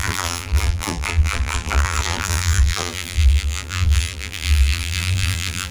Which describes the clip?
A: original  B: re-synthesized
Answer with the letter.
B